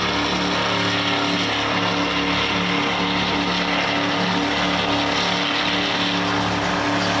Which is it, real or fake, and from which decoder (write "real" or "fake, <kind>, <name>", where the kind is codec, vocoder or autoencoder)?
real